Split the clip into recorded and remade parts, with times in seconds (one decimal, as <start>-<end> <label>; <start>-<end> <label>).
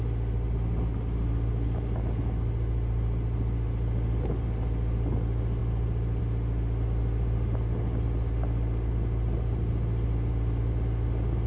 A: 0.0-11.5 recorded